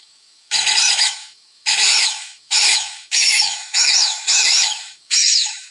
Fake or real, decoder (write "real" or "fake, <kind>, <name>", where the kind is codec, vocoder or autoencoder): fake, autoencoder, DAC-VAE